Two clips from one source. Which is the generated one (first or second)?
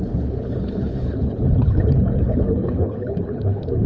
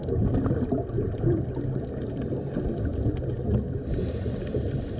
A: first